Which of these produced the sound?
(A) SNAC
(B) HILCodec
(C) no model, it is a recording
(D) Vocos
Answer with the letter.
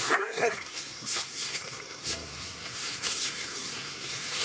A